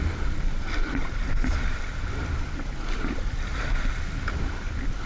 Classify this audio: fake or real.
real